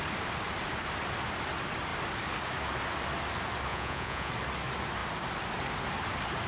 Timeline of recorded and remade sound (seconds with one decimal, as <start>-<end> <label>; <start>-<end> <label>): 0.0-3.7 recorded; 3.7-4.3 remade; 4.3-6.5 recorded